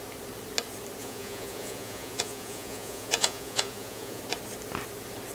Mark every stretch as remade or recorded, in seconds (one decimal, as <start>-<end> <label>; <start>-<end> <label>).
0.0-1.0 recorded; 1.0-4.2 remade; 4.2-5.3 recorded